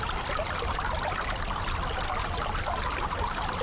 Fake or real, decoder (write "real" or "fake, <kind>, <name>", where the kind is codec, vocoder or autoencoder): real